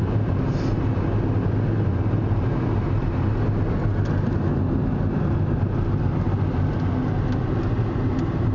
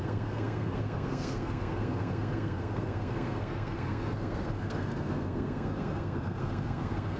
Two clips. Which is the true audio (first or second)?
first